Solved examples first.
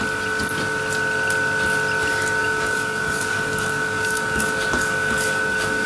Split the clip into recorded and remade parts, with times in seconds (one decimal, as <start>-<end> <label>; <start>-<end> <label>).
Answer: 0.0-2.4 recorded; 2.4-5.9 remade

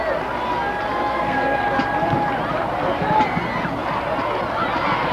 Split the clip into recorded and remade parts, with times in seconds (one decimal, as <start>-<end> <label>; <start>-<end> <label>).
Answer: 0.0-1.1 recorded; 1.1-1.6 remade; 1.6-5.1 recorded

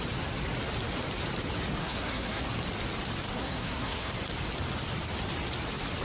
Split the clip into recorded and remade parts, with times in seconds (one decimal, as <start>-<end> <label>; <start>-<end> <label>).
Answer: 0.0-1.8 recorded; 1.8-2.4 remade; 2.4-3.3 recorded; 3.3-4.1 remade; 4.1-6.0 recorded

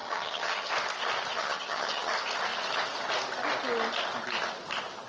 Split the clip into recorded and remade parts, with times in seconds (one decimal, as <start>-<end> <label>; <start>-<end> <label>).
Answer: 0.0-0.7 remade; 0.7-1.4 recorded; 1.4-2.1 remade; 2.1-5.1 recorded

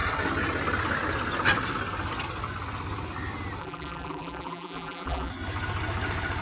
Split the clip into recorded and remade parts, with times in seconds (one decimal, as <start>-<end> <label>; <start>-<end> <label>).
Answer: 0.0-3.6 recorded; 3.6-5.3 remade; 5.3-6.4 recorded

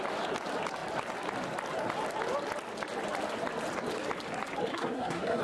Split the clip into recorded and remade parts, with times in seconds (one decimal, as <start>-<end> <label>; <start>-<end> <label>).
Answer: 0.0-4.7 recorded; 4.7-5.4 remade

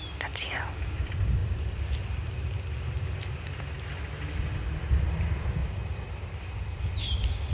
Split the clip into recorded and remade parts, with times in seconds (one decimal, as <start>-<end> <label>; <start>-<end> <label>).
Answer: 0.0-7.5 recorded

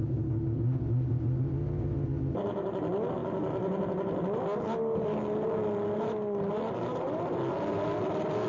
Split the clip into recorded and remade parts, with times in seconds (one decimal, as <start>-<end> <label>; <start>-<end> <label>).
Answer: 0.0-8.5 recorded